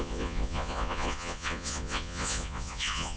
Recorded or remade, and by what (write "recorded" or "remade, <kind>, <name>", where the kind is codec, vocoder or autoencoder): remade, vocoder, Vocos